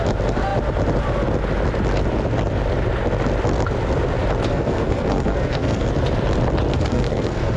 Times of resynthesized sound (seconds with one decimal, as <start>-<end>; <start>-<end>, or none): 4.5-5.9; 6.7-7.6